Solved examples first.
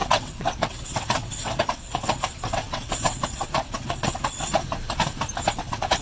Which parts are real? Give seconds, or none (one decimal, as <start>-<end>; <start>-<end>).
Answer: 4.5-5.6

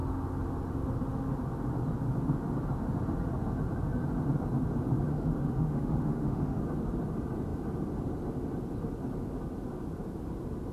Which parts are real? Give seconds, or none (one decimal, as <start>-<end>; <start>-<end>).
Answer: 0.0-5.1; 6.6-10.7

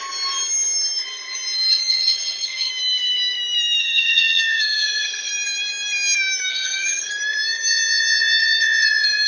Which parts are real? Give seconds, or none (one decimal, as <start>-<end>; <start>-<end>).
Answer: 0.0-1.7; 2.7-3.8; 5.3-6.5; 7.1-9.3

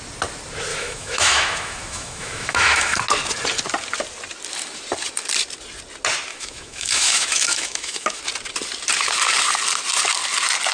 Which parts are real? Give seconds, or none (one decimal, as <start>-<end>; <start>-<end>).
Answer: 0.0-0.7; 3.0-6.3; 8.2-10.7